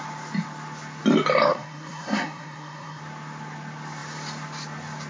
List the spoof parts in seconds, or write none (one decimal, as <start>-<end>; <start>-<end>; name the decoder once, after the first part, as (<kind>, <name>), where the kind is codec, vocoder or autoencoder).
1.5-3.0 (codec, SNAC)